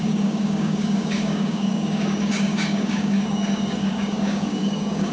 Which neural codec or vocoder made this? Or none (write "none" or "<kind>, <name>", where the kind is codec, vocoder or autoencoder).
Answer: codec, DAC